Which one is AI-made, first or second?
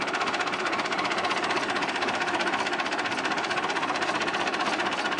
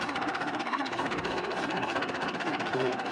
second